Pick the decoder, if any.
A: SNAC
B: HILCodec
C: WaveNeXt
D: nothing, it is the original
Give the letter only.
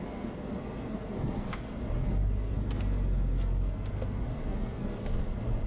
A